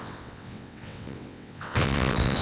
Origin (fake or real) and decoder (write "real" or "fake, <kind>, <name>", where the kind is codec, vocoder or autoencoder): fake, vocoder, WaveNeXt